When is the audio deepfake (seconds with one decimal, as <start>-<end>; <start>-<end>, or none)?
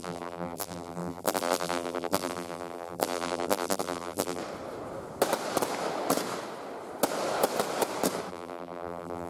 0.0-4.4; 8.3-9.3